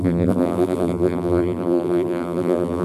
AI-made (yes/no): yes